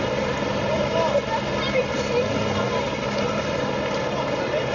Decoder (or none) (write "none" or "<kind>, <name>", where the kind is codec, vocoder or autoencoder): none